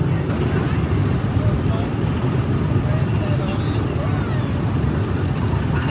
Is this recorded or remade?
recorded